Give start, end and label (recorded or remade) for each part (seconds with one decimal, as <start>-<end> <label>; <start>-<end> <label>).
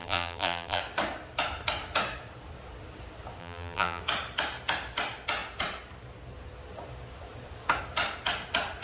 0.0-0.8 remade; 0.8-3.4 recorded; 3.4-4.0 remade; 4.0-8.8 recorded